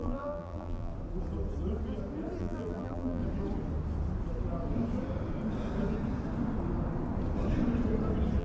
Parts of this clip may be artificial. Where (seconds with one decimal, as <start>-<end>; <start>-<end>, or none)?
0.0-0.9; 2.4-3.2